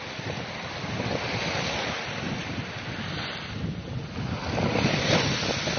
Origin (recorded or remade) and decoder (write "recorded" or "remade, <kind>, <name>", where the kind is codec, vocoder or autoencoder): recorded